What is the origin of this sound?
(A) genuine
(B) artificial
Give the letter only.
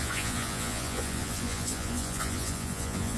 B